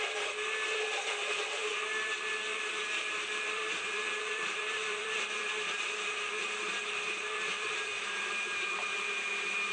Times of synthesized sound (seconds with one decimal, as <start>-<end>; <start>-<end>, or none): 0.0-1.6; 2.4-9.7